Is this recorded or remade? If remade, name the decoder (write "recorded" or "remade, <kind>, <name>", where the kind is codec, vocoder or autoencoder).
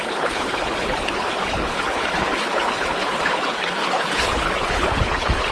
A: remade, codec, HILCodec